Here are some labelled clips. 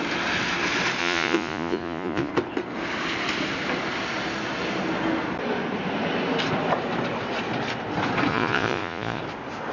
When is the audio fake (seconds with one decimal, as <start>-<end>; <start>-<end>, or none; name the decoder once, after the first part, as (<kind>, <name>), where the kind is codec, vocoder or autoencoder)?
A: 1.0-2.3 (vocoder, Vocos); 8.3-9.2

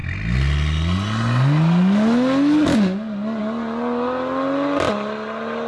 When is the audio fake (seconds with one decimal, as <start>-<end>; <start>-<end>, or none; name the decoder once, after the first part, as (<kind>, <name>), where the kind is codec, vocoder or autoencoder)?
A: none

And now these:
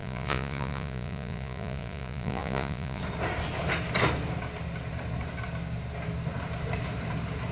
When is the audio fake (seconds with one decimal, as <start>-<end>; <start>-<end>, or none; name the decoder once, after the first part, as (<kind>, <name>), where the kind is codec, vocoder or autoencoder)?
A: 0.0-3.0 (vocoder, Vocos)

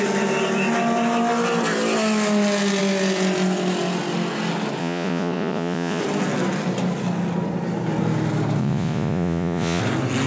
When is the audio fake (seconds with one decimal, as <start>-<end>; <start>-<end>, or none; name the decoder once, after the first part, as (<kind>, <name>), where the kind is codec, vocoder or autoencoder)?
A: 4.8-6.0 (vocoder, Vocos); 8.6-9.8